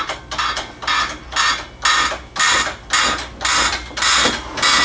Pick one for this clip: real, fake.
real